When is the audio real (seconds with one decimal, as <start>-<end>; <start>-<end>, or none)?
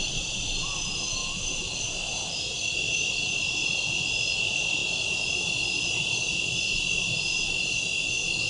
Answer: 0.0-8.5